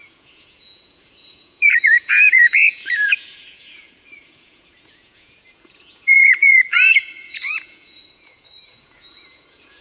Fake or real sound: fake